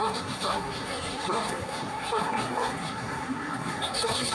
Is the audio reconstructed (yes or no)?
yes